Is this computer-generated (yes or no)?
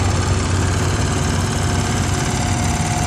no